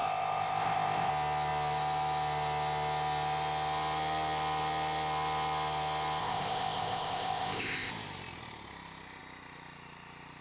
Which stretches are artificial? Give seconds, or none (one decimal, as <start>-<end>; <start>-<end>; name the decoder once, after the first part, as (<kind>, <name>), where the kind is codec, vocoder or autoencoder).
0.0-1.1 (codec, ZipCodec); 6.2-7.9